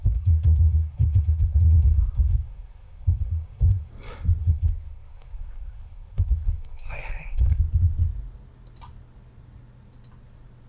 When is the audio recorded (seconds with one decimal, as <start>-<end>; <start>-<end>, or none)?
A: 3.9-4.4; 7.6-10.7